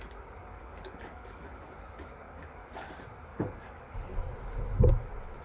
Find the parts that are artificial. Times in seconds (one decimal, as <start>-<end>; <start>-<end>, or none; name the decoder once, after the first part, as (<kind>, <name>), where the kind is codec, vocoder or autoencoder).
0.4-2.7 (codec, DAC); 3.3-4.2